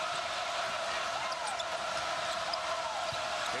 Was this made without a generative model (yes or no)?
yes